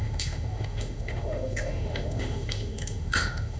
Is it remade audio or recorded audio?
remade